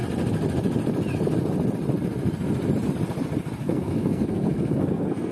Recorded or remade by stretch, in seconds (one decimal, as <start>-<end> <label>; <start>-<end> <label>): 0.0-3.6 recorded; 3.6-5.3 remade